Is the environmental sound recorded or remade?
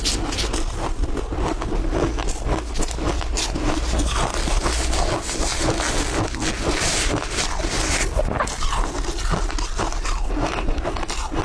recorded